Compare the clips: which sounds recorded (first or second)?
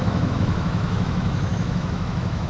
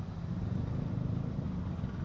second